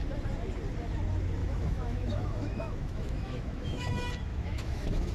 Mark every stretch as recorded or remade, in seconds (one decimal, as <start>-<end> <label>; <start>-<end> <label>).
0.0-1.4 recorded; 1.4-3.9 remade; 3.9-4.3 recorded; 4.3-5.1 remade